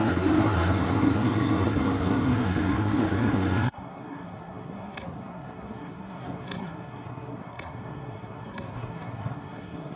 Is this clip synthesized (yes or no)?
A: yes